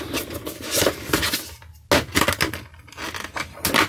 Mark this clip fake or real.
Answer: real